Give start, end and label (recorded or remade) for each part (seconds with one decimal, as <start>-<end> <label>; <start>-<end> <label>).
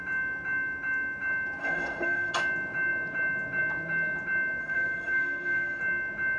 0.0-1.6 recorded; 1.6-2.3 remade; 2.3-4.6 recorded; 4.6-5.8 remade; 5.8-6.4 recorded